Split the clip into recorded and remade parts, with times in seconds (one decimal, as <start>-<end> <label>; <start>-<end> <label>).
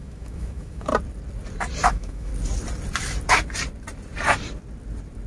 0.0-0.9 remade; 0.9-1.9 recorded; 1.9-2.3 remade; 2.3-5.3 recorded